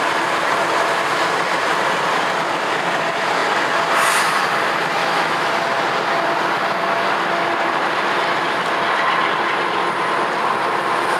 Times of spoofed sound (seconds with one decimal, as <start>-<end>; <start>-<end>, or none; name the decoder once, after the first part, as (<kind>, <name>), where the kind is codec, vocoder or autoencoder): 5.0-5.5 (autoencoder, DAC-VAE)